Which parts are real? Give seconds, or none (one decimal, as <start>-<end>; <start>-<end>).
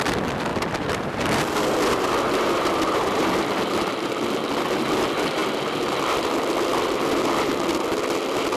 0.0-0.5; 4.1-8.6